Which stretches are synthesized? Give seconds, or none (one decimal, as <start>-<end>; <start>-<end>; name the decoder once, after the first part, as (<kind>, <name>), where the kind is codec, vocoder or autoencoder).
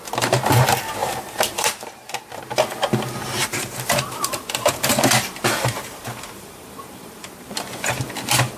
1.0-2.1 (vocoder, BigVGAN v2); 3.2-8.0